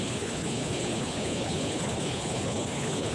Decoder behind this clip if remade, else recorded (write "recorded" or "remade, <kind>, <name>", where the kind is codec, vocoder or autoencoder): remade, codec, HILCodec